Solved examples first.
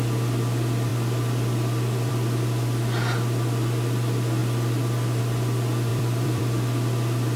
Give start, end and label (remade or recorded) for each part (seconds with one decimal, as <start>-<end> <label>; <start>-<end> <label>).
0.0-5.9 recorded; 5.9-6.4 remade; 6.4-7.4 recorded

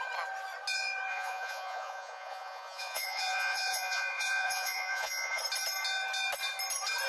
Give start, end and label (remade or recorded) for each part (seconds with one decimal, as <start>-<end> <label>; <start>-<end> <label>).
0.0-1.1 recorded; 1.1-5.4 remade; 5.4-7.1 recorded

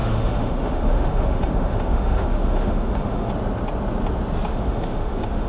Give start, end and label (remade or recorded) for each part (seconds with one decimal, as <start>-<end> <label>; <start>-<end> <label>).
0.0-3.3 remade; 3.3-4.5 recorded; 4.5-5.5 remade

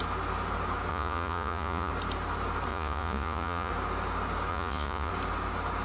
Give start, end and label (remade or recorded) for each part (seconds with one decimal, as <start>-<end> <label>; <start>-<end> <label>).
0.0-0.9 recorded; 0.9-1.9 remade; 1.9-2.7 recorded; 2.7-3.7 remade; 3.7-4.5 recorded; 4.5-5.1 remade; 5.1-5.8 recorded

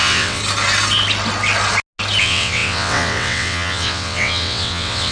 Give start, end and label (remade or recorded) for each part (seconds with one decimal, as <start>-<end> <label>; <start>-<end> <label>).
0.0-0.4 remade; 0.4-2.2 recorded; 2.2-5.1 remade

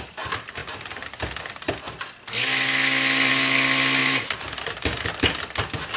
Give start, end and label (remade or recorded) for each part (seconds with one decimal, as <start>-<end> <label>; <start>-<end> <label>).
0.0-4.0 recorded; 4.0-5.4 remade; 5.4-6.0 recorded

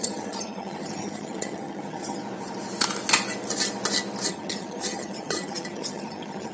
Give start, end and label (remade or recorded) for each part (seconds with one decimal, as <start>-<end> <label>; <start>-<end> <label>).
0.0-2.2 remade; 2.2-4.3 recorded; 4.3-6.5 remade

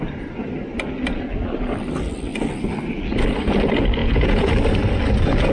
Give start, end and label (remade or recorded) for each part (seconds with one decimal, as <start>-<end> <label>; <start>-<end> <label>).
0.0-4.0 recorded; 4.0-4.5 remade; 4.5-5.5 recorded